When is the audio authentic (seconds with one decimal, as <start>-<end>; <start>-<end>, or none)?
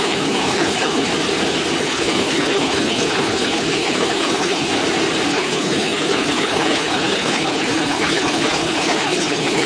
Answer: 1.1-1.8; 4.7-5.3